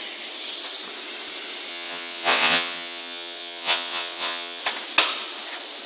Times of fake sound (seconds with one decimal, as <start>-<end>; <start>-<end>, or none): 1.7-4.6